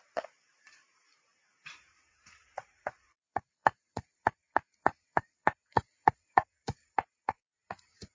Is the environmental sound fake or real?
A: fake